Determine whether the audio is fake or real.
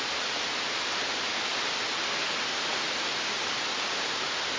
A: real